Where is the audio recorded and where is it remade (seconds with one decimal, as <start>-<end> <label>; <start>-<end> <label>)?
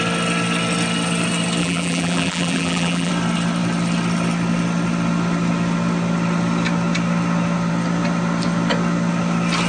0.0-1.6 recorded; 1.6-3.1 remade; 3.1-9.7 recorded